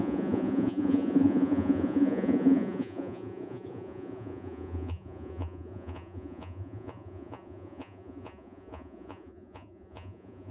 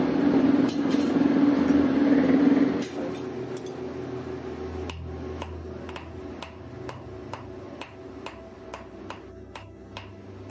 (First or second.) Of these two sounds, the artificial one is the first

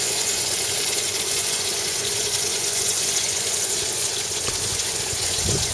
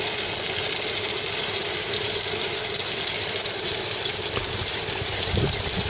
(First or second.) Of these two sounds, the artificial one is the first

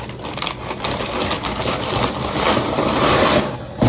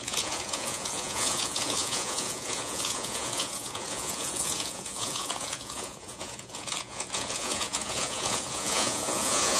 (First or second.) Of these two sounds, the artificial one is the second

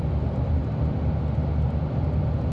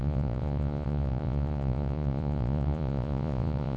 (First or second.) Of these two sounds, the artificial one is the second